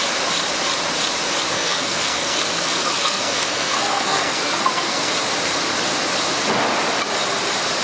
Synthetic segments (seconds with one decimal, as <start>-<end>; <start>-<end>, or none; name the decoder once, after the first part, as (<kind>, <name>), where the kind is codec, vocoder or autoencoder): 1.5-5.1 (codec, SNAC)